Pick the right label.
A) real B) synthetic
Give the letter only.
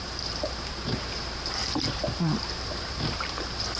B